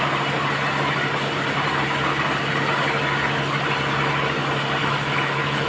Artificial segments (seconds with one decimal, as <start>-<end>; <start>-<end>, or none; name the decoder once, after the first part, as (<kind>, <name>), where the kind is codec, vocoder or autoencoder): 4.8-5.7 (autoencoder, DAC-VAE)